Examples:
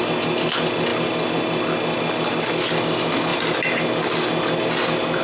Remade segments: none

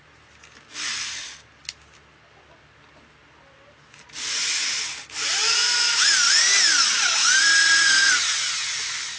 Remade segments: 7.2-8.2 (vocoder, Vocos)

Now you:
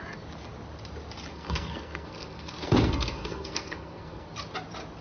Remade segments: 1.3-4.3 (codec, SNAC)